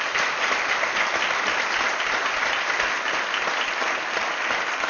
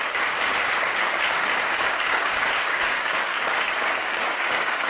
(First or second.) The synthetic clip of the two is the second